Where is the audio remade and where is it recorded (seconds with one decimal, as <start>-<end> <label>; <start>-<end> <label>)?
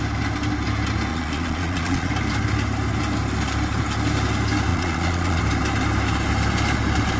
0.0-1.1 recorded; 1.1-2.1 remade; 2.1-4.7 recorded; 4.7-5.4 remade; 5.4-7.2 recorded